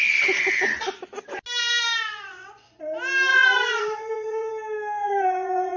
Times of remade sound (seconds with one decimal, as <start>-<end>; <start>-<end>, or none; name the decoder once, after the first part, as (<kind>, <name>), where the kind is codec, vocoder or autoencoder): 2.1-2.8 (vocoder, Vocos); 3.3-4.5; 5.0-5.8